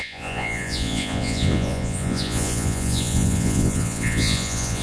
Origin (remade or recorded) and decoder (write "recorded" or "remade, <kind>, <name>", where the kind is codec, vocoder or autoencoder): remade, vocoder, Vocos